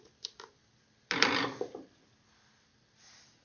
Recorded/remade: recorded